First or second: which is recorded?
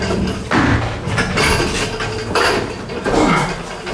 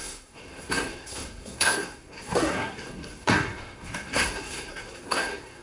first